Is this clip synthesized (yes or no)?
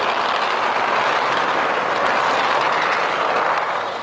no